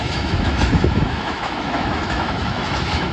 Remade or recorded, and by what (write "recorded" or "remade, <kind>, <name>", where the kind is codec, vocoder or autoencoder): remade, autoencoder, DAC-VAE